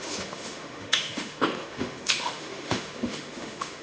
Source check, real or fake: fake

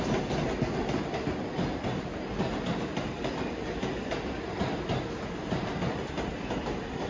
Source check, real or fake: real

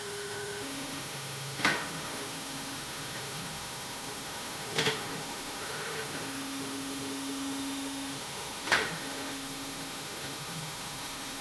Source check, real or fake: fake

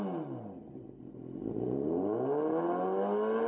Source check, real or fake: real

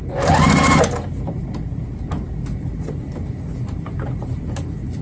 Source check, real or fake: real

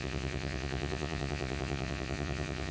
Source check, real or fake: fake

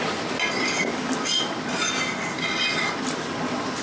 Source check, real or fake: real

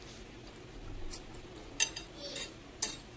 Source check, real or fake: real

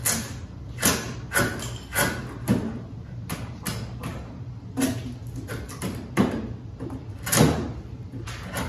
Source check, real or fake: real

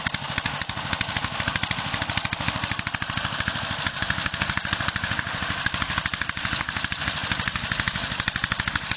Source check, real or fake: real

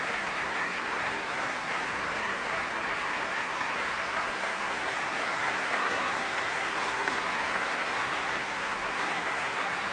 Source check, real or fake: fake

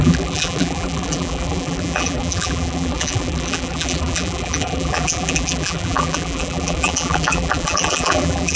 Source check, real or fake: fake